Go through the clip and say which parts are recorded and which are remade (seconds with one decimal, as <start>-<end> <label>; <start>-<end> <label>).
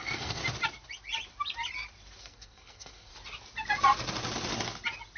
0.0-0.4 remade; 0.4-2.2 recorded; 2.2-3.1 remade; 3.1-5.2 recorded